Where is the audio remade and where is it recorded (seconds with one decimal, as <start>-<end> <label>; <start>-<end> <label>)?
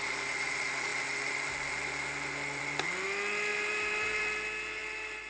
0.0-3.5 recorded; 3.5-4.2 remade; 4.2-4.8 recorded; 4.8-5.3 remade